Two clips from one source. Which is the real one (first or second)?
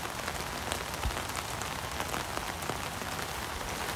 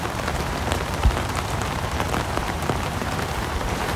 first